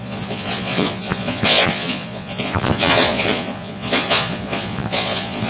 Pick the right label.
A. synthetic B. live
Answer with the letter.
A